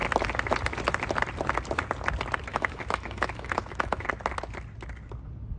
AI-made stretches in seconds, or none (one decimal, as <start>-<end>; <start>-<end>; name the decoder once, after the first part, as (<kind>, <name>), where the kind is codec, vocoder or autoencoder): 2.5-4.1 (autoencoder, DAC-VAE)